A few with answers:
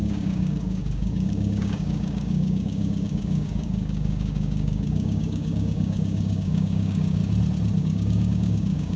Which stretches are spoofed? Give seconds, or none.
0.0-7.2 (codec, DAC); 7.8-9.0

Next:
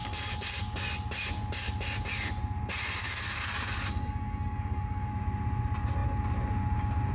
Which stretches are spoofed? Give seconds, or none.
0.0-0.6 (codec, DAC); 3.0-5.1

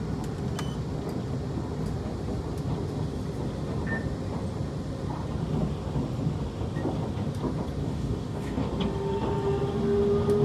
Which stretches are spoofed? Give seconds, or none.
7.8-8.7 (codec, DAC)

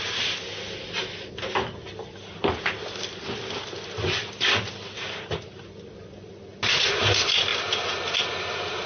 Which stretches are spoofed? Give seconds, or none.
none

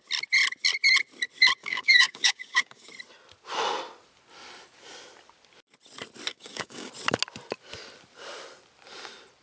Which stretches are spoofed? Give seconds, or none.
1.6-2.9 (codec, DAC); 6.3-6.9

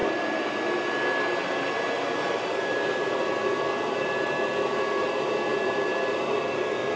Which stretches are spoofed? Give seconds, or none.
none

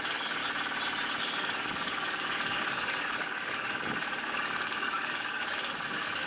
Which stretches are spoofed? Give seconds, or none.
0.0-0.4 (codec, DAC); 1.2-6.3